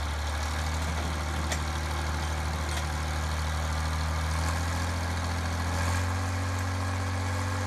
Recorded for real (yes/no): yes